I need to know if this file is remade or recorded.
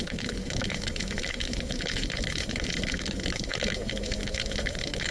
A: remade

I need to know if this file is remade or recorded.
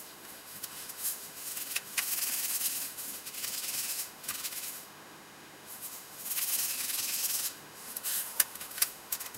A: remade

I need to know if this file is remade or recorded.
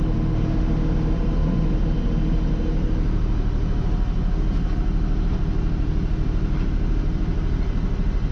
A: recorded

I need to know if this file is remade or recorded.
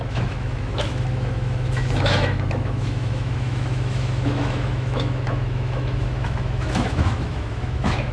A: remade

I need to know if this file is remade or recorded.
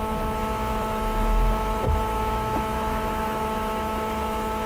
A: remade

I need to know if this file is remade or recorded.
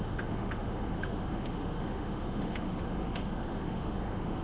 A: remade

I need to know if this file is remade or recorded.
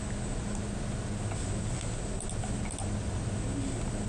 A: recorded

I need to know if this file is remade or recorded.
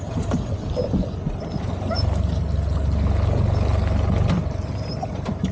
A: recorded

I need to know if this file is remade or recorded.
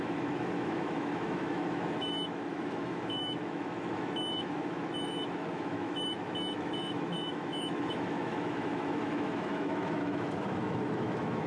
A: remade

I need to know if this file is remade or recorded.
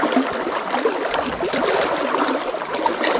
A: recorded